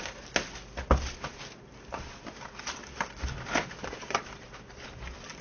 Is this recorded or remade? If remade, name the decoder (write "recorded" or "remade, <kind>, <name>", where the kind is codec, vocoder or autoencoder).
recorded